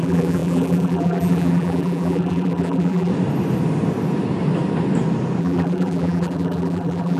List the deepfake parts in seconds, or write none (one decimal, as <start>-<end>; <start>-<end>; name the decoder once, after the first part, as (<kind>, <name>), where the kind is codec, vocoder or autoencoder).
0.0-3.1 (vocoder, BigVGAN v2); 5.4-7.2